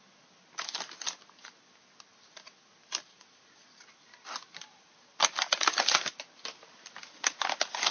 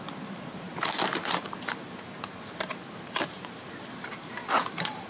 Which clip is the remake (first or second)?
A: second